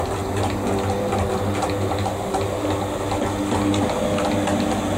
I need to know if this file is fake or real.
real